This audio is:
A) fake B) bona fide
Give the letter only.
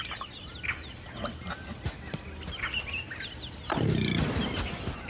B